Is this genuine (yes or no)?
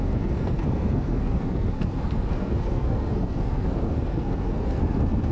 no